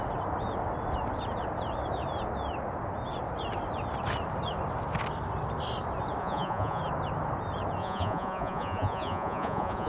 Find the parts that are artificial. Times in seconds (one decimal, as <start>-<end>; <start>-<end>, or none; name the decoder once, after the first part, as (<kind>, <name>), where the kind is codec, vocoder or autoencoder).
6.2-6.8 (vocoder, Vocos); 7.8-9.9